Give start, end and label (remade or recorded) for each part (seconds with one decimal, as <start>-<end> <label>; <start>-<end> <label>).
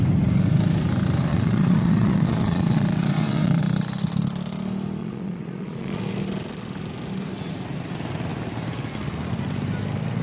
0.0-1.3 recorded; 1.3-3.6 remade; 3.6-5.0 recorded; 5.0-6.0 remade; 6.0-10.2 recorded